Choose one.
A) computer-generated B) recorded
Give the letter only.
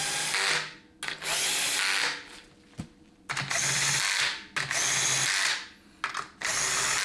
B